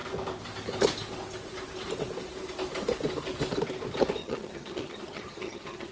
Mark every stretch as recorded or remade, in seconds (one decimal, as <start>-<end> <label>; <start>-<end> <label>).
0.0-4.2 recorded; 4.2-5.9 remade